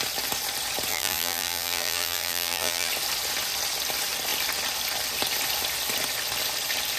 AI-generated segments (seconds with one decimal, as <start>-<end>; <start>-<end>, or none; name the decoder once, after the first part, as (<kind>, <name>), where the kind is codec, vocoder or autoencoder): 0.9-2.9 (vocoder, BigVGAN v2)